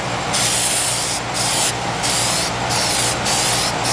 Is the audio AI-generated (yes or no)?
no